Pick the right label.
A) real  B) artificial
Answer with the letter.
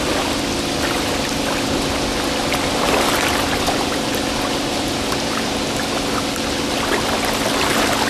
A